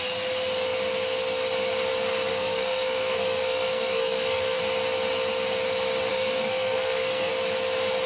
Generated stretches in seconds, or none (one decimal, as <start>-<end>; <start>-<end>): 2.3-4.6; 6.1-7.3